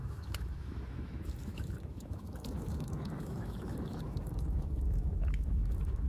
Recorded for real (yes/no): no